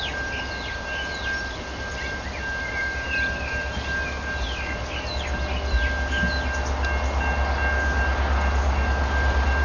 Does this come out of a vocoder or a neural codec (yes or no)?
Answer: no